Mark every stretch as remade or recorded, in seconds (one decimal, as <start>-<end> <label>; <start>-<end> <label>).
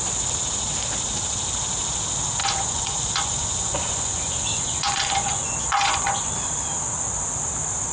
0.0-2.4 recorded; 2.4-6.3 remade; 6.3-7.9 recorded